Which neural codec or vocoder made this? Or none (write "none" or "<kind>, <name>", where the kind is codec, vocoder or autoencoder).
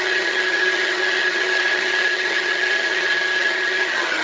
vocoder, HiFi-GAN